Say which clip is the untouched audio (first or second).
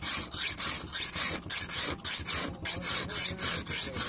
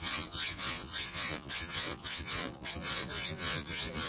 first